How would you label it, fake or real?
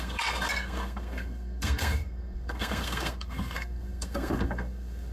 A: fake